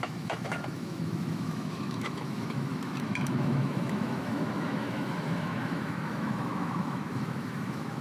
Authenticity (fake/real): fake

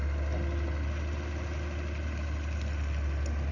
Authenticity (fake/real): real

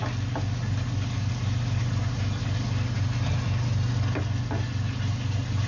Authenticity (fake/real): real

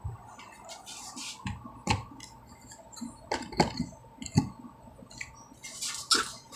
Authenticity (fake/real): real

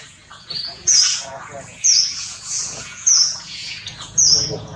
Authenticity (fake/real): fake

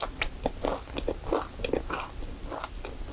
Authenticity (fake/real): real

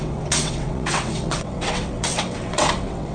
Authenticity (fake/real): fake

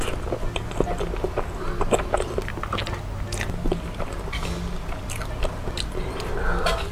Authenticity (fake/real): real